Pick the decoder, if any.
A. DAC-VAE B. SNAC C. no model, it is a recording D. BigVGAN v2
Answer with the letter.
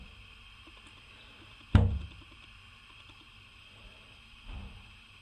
D